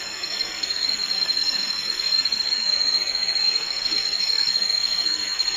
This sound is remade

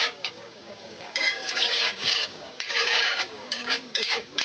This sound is remade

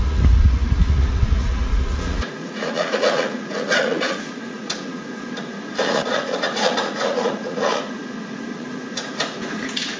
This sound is remade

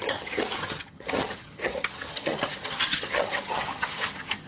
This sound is remade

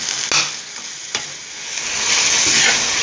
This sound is recorded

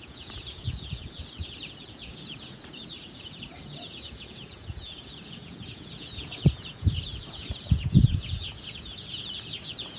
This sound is remade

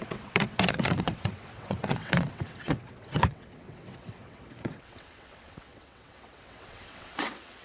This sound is remade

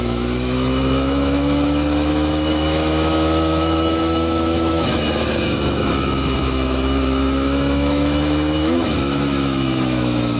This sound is remade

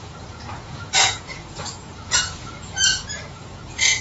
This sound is remade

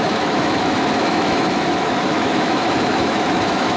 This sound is remade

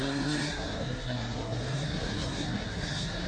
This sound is remade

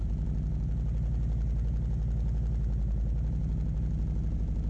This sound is recorded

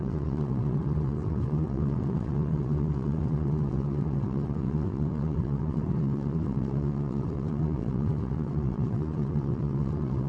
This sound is remade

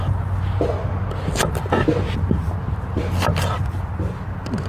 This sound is recorded